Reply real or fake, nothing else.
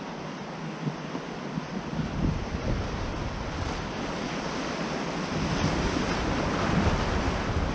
real